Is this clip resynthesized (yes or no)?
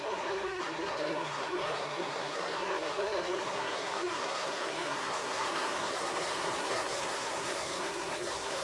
yes